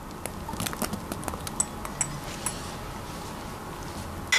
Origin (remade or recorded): recorded